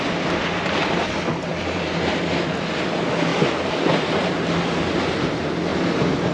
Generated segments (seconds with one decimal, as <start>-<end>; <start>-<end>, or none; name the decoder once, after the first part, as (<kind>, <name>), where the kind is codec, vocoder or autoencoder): 1.5-2.3 (vocoder, BigVGAN v2); 3.3-4.3; 5.7-6.3